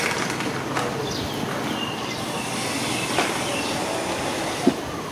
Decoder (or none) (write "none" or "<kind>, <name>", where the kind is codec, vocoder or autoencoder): none